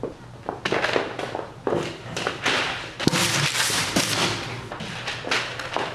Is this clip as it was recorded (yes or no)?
yes